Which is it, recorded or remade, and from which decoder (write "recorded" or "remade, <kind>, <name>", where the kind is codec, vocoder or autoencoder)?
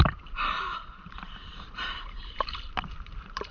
remade, vocoder, BigVGAN v2